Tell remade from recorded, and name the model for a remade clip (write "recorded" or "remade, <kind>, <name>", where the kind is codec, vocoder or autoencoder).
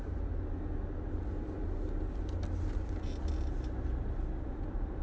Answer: recorded